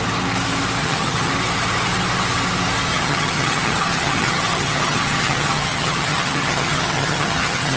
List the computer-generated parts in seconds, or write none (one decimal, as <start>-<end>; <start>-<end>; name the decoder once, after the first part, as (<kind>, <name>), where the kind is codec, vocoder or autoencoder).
0.8-1.3 (vocoder, HiFi-GAN); 2.9-7.8